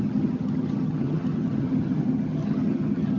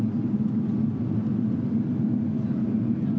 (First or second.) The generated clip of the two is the first